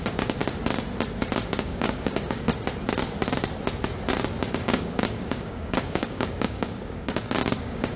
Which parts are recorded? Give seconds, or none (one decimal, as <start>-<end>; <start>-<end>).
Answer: 0.4-1.5; 2.5-4.5